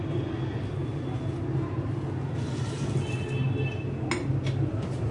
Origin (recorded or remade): recorded